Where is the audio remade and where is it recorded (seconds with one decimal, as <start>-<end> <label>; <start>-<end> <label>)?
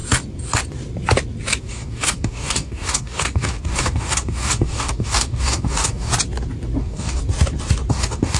0.0-1.6 recorded; 1.6-6.1 remade; 6.1-6.8 recorded; 6.8-7.2 remade; 7.2-7.9 recorded; 7.9-8.4 remade